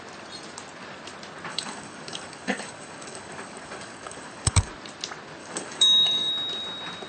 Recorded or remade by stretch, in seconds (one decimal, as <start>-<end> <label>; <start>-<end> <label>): 0.0-1.5 recorded; 1.5-4.7 remade; 4.7-5.4 recorded; 5.4-6.3 remade; 6.3-7.1 recorded